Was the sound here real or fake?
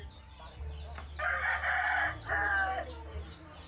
real